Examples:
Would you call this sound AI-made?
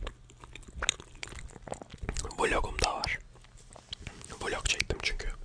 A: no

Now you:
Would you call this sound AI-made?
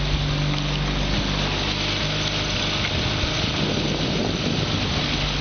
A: no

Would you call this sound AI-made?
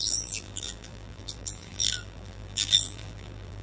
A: yes